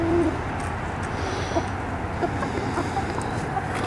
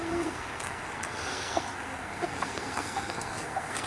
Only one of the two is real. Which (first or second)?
first